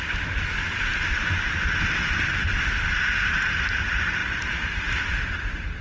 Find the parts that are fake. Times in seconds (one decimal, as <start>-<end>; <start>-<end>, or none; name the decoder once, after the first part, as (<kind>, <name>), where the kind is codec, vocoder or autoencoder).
none